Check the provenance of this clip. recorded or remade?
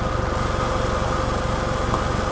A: recorded